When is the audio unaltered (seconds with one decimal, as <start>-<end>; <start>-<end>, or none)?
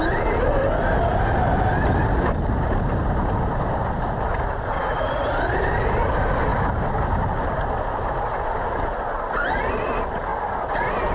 0.0-11.1